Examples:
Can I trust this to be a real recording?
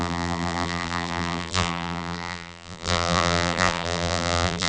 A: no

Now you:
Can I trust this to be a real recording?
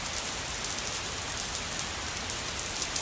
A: yes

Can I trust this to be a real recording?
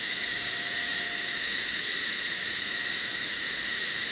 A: no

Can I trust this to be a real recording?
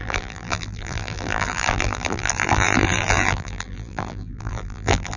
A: no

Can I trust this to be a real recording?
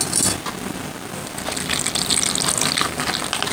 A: yes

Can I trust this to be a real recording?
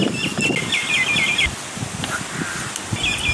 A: yes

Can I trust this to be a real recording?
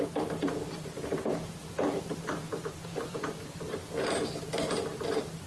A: no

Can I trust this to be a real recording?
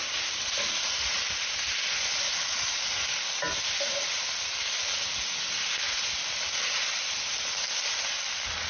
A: yes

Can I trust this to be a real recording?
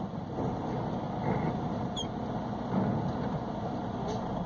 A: yes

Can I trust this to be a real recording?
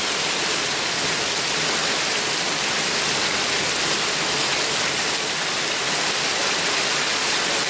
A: yes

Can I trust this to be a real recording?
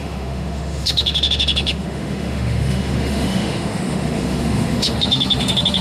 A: no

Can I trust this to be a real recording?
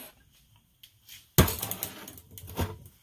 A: yes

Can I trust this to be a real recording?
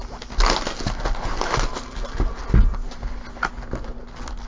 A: yes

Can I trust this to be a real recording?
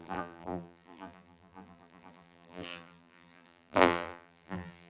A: no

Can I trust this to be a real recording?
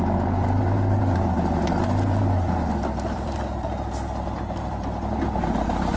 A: yes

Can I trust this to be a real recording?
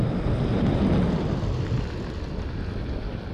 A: yes